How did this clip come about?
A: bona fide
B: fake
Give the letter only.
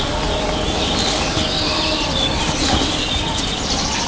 A